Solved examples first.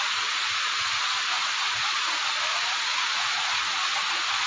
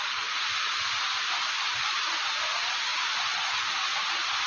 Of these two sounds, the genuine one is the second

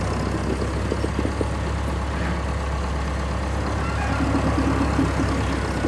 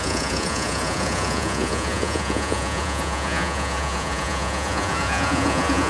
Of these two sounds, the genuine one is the first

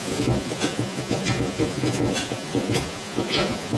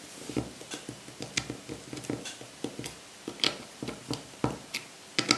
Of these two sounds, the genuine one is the second